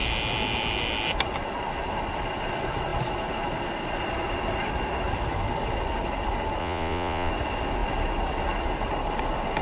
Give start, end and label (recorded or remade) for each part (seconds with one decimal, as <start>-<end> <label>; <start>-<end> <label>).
0.0-6.6 recorded; 6.6-7.3 remade; 7.3-9.6 recorded